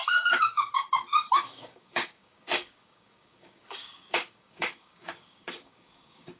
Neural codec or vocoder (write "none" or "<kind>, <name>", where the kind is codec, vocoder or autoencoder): codec, DAC